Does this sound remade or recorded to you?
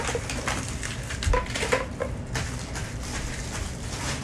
recorded